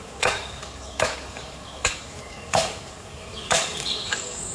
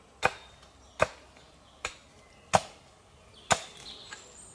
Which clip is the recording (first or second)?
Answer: second